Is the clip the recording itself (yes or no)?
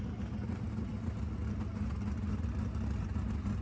yes